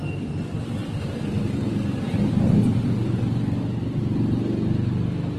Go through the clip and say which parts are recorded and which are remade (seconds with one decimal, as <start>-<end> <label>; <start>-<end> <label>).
0.0-0.8 recorded; 0.8-4.0 remade; 4.0-5.4 recorded